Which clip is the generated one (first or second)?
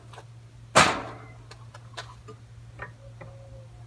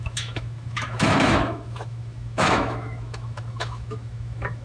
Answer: second